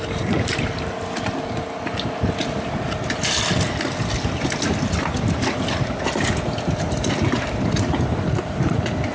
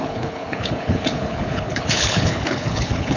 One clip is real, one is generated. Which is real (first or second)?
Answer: first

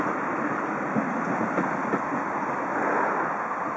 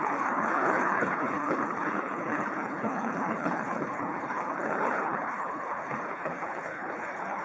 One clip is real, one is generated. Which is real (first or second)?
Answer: first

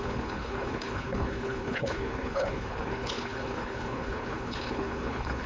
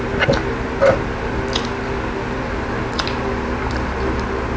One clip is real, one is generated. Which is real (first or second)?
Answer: second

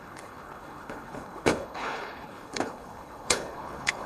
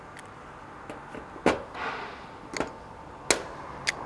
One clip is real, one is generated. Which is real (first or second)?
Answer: second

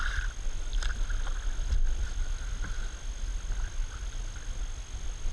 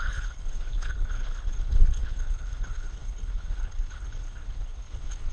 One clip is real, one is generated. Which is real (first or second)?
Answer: first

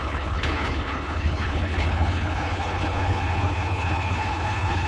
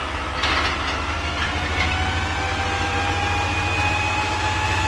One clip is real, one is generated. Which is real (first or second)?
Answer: second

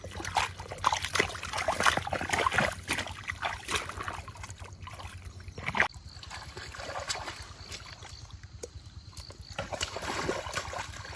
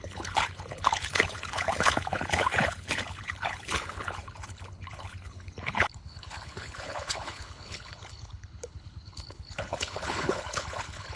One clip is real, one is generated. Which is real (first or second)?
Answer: first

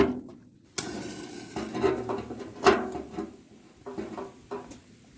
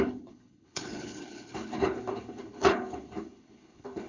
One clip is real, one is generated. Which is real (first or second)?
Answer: first